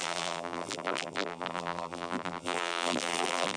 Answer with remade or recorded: remade